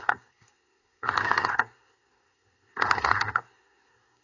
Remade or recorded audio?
remade